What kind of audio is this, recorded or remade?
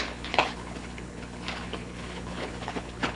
remade